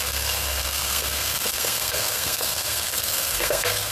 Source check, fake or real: fake